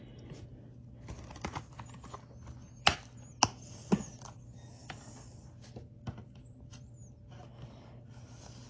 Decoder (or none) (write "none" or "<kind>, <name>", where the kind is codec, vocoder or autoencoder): none